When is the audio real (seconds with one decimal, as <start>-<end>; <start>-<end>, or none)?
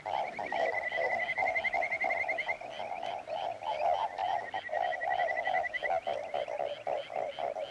0.0-7.7